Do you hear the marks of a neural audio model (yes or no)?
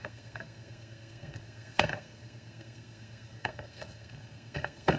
yes